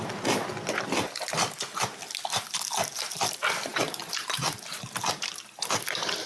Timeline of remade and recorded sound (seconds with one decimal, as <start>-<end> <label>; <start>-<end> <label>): 0.0-3.7 recorded; 3.7-4.6 remade; 4.6-6.3 recorded

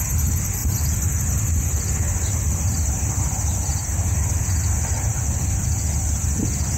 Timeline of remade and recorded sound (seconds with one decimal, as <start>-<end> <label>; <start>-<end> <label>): 0.0-0.6 recorded; 0.6-2.8 remade; 2.8-3.8 recorded; 3.8-5.1 remade; 5.1-6.8 recorded

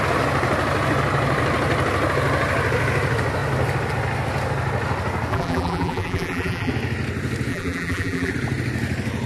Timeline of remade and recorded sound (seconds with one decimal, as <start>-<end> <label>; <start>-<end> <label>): 0.0-5.3 recorded; 5.3-6.7 remade; 6.7-7.5 recorded; 7.5-8.3 remade; 8.3-9.3 recorded